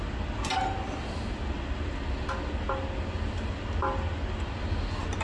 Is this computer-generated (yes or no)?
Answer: no